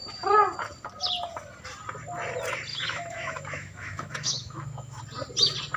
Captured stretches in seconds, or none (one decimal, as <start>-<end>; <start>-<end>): 0.0-2.7; 5.0-5.8